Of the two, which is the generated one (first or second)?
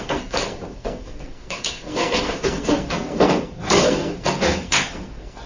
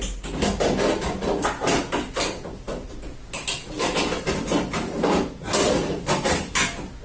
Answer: first